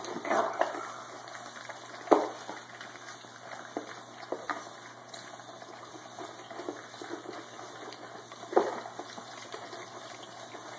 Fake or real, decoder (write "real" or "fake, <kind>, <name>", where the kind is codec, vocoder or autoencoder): real